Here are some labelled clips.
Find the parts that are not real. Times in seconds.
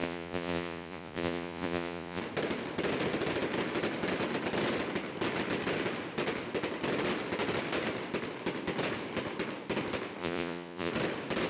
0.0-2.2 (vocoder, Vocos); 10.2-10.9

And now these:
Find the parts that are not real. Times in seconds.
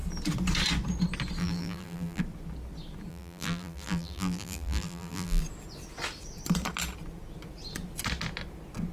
1.4-2.2 (vocoder, BigVGAN v2); 3.1-5.4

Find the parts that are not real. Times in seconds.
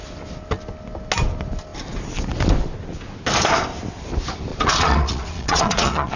4.5-6.2 (vocoder, Vocos)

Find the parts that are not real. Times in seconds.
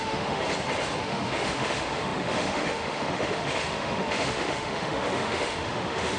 0.0-0.4 (autoencoder, DAC-VAE); 1.0-6.2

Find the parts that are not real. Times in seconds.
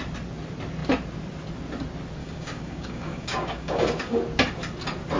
2.2-4.2 (codec, DAC)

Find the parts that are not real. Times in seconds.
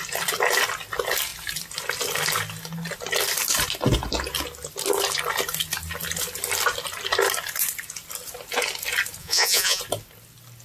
9.2-9.8 (vocoder, Vocos)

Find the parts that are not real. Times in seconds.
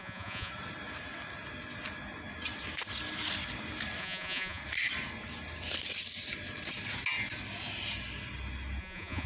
0.0-0.5 (vocoder, Vocos); 4.0-4.6; 8.8-9.3